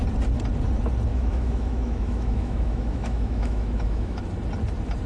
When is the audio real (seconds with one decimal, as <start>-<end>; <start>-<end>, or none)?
0.0-1.1; 4.2-5.1